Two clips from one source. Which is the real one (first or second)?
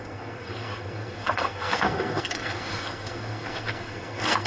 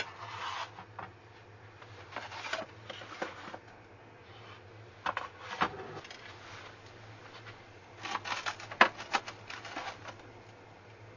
second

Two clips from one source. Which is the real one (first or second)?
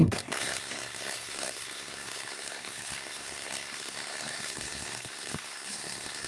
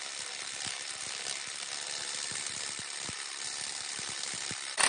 second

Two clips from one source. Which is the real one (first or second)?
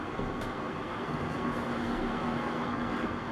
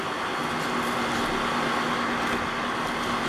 second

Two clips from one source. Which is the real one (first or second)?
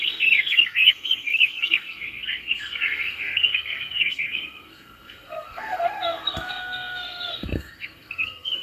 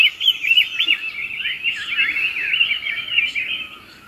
second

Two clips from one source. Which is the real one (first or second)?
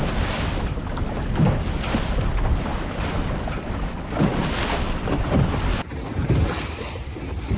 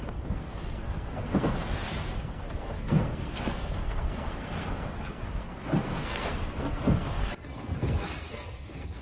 first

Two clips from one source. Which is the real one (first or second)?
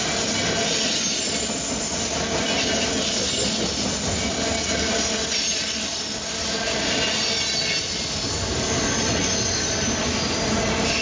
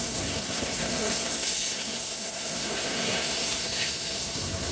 first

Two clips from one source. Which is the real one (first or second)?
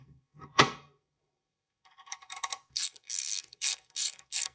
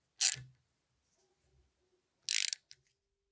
second